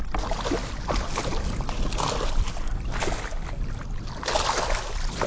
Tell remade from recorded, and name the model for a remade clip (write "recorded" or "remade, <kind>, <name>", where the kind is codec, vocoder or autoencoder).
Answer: recorded